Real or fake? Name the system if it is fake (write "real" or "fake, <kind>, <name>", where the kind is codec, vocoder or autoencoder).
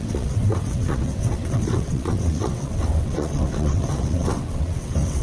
fake, vocoder, WaveNeXt